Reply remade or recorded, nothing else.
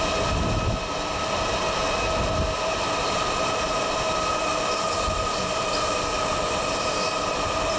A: recorded